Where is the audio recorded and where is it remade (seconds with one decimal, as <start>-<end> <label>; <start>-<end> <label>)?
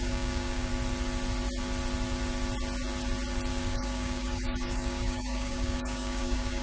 0.0-0.7 remade; 0.7-3.5 recorded; 3.5-6.6 remade